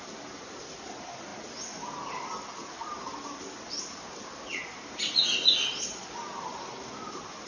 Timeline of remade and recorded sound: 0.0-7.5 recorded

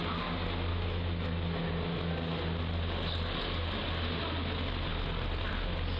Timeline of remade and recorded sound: 0.0-0.7 recorded; 0.7-1.7 remade; 1.7-6.0 recorded

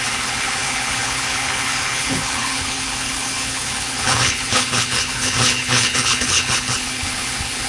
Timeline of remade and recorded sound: 0.0-7.7 remade

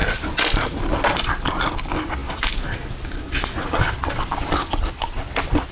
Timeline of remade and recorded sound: 0.0-5.7 recorded

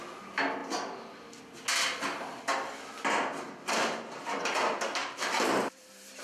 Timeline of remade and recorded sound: 0.0-5.0 recorded; 5.0-6.2 remade

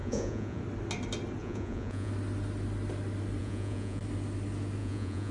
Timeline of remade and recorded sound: 0.0-0.6 remade; 0.6-1.4 recorded; 1.4-2.1 remade; 2.1-3.4 recorded; 3.4-4.0 remade; 4.0-4.8 recorded; 4.8-5.3 remade